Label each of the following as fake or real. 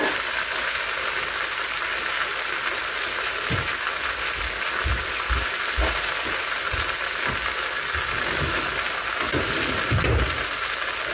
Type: real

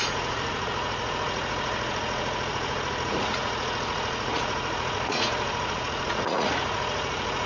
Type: fake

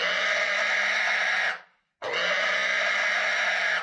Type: real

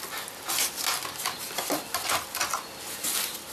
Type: real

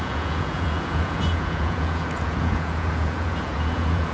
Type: fake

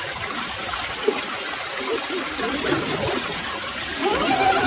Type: real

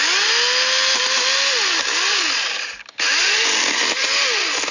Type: real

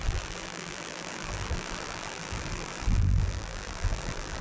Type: fake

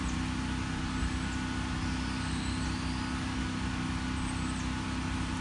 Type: real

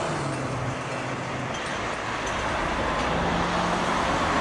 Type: real